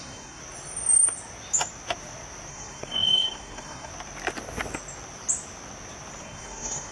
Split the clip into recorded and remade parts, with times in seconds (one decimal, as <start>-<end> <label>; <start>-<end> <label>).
0.0-0.4 remade; 0.4-2.5 recorded; 2.5-3.9 remade; 3.9-6.2 recorded; 6.2-6.9 remade